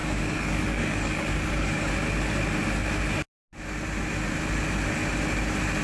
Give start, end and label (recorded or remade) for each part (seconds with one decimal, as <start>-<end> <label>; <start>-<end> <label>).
0.0-1.9 remade; 1.9-5.8 recorded